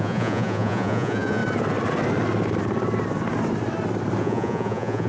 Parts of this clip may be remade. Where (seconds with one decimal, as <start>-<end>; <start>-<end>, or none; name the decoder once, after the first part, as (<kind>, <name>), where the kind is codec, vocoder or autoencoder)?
0.0-1.4 (vocoder, Vocos); 4.2-5.1